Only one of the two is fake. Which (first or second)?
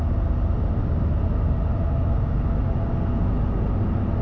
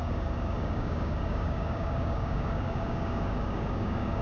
second